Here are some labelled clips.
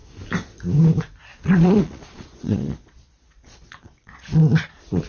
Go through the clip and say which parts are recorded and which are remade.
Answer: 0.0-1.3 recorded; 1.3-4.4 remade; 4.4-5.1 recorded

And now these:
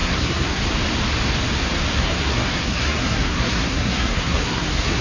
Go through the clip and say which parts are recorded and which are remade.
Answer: 0.0-0.6 remade; 0.6-1.9 recorded; 1.9-5.0 remade

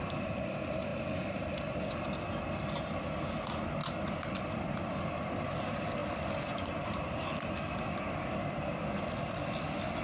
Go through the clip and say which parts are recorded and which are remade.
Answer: 0.0-0.9 recorded; 0.9-1.8 remade; 1.8-3.8 recorded; 3.8-5.4 remade; 5.4-10.0 recorded